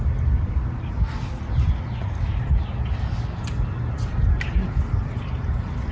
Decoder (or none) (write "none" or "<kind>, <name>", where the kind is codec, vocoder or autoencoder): none